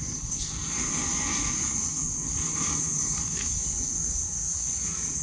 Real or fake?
fake